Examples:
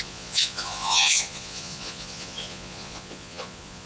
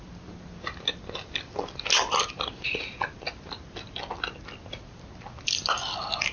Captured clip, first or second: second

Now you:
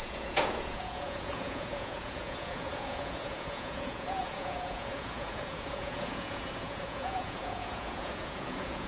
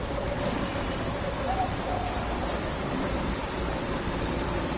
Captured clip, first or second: second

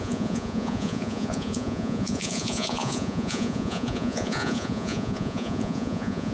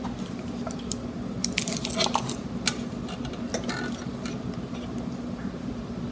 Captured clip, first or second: second